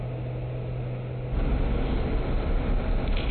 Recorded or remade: recorded